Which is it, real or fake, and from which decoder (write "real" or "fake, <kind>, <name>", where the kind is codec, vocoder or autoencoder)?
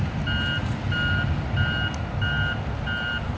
real